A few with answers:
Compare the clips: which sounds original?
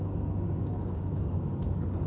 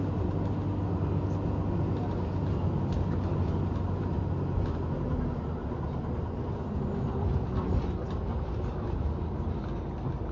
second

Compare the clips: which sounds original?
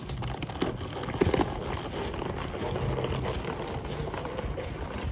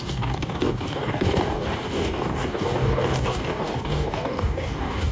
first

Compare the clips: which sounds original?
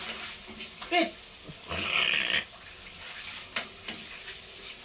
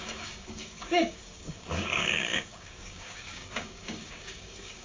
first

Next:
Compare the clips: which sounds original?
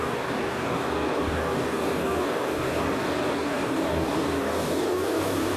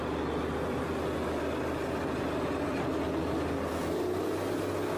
second